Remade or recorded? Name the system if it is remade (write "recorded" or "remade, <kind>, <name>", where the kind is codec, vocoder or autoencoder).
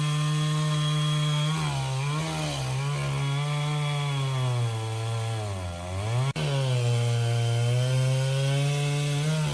recorded